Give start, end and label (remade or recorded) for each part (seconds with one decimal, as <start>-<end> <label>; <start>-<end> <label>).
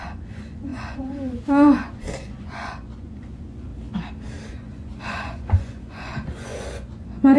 0.0-3.7 remade; 3.7-4.5 recorded; 4.5-7.4 remade